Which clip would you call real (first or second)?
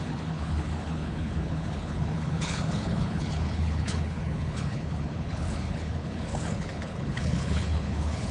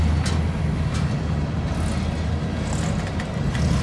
second